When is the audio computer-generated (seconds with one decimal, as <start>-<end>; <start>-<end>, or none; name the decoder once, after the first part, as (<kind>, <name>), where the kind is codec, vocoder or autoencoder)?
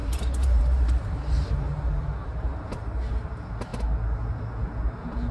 0.0-1.9 (vocoder, BigVGAN v2); 2.3-3.3